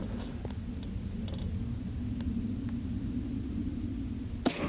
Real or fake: real